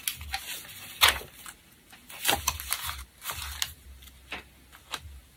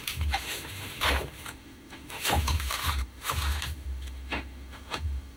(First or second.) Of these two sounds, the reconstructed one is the second